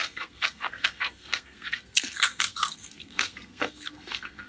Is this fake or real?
fake